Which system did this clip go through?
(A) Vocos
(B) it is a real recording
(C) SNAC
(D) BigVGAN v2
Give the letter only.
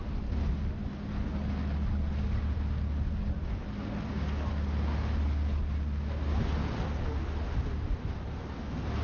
B